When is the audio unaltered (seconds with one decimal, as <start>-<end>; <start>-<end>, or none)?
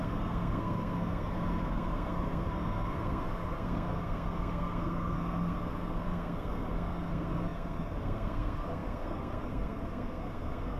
none